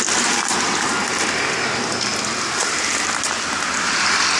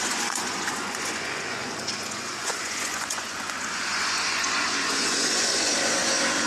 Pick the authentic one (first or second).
first